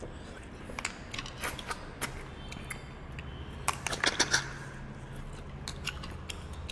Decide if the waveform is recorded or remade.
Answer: recorded